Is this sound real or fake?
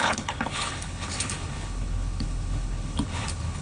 fake